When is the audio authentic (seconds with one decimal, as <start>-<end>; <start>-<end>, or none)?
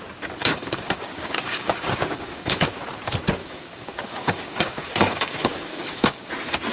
0.0-0.4; 2.7-3.4; 6.3-6.7